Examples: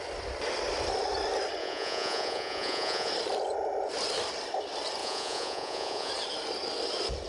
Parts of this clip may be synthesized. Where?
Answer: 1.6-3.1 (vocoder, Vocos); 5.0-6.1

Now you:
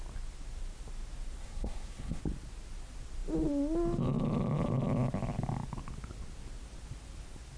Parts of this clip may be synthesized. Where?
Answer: 1.4-2.2 (codec, SNAC)